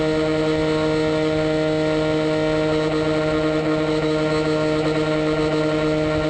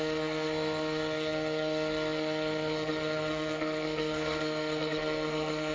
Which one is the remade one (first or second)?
second